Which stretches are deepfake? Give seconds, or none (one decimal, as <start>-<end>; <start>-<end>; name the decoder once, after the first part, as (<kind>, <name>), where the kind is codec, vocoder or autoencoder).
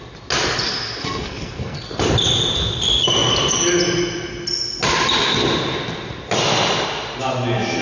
1.0-1.8 (codec, SNAC)